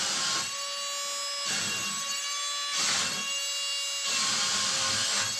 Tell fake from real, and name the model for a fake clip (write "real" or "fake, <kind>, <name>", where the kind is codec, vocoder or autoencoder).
real